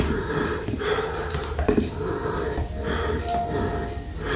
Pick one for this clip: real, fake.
real